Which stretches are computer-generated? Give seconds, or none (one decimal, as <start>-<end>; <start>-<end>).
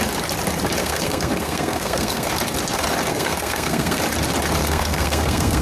0.8-2.3; 3.1-4.0; 4.6-5.6